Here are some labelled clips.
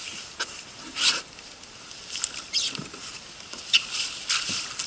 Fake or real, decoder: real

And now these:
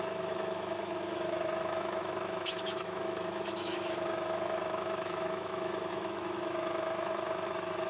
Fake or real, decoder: fake, autoencoder, DAC-VAE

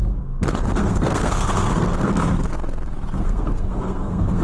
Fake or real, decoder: fake, codec, SNAC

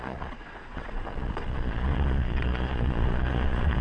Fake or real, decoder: fake, vocoder, Vocos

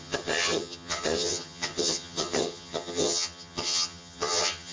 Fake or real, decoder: fake, vocoder, HiFi-GAN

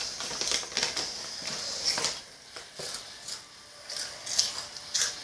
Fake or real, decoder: real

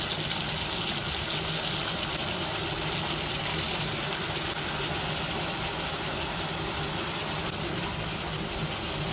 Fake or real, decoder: real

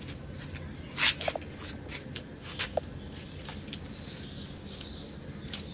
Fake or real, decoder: real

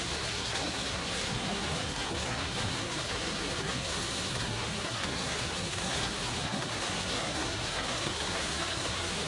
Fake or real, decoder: fake, codec, SNAC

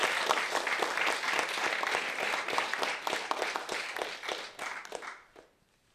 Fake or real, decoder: real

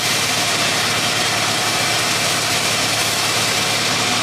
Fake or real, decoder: real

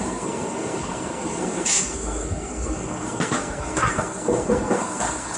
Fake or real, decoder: fake, codec, SNAC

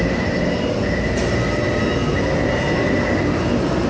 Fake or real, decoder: real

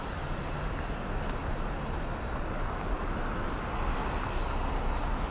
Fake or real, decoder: real